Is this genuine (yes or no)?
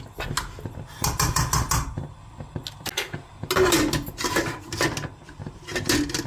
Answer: yes